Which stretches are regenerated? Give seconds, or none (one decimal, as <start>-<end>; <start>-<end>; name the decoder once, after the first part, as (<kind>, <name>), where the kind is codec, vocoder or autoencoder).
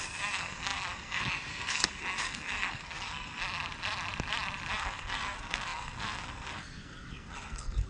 0.0-3.4 (codec, SNAC); 4.7-7.9